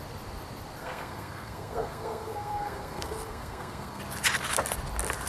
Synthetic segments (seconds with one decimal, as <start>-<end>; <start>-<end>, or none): 0.8-4.0